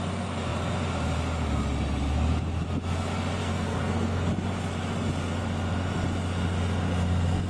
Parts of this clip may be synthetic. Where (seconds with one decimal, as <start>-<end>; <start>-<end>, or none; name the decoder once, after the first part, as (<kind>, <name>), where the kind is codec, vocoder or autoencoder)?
3.4-4.3 (codec, SNAC)